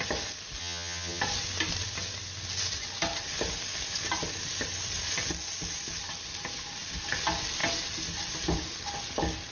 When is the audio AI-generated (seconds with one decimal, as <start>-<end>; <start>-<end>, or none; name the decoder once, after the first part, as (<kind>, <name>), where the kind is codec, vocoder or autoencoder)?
0.6-1.2 (vocoder, HiFi-GAN)